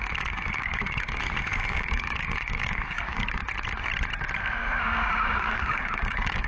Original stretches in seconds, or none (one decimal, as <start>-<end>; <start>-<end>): 3.4-4.4